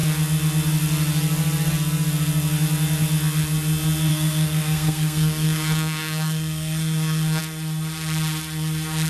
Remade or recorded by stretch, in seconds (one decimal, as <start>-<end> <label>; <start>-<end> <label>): 0.0-4.1 recorded; 4.1-7.4 remade; 7.4-9.1 recorded